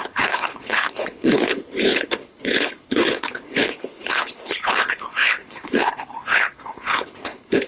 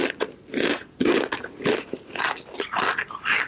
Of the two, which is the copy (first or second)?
first